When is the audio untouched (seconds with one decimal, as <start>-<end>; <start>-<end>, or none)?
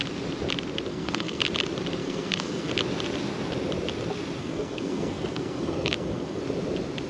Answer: 0.0-0.9; 1.4-2.0; 2.7-4.4; 6.4-7.1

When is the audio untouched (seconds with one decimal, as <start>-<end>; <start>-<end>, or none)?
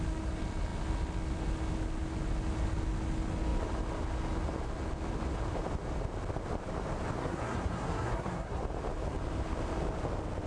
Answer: 0.0-7.2; 8.6-10.5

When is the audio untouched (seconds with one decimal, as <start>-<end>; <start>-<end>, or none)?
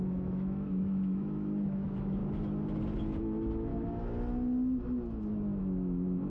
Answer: 2.2-3.2; 3.7-5.6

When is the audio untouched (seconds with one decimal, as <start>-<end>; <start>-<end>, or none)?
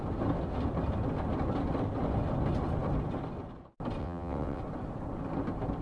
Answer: 0.0-4.0; 4.6-5.8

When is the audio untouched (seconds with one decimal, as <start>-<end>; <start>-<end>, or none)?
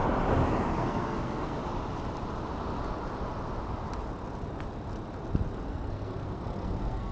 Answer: 0.0-0.7; 1.6-5.7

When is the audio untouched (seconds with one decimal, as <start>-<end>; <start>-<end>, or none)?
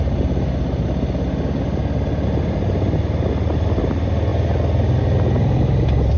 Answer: 0.0-6.2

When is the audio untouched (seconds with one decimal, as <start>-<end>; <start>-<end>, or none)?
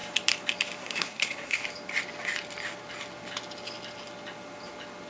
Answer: 0.0-0.8; 1.6-5.1